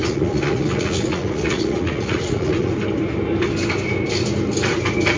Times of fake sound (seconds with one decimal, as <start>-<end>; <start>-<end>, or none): 0.0-2.7